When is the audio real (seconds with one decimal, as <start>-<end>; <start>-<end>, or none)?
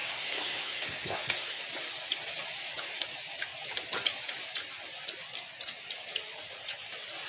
1.6-7.3